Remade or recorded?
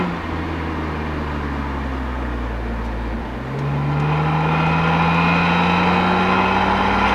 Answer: recorded